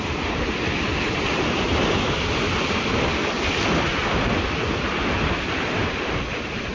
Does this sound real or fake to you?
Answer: real